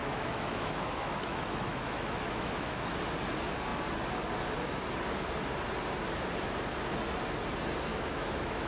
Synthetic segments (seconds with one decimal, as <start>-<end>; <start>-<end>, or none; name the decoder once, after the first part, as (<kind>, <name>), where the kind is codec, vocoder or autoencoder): 0.0-3.0 (autoencoder, DAC-VAE); 7.9-8.7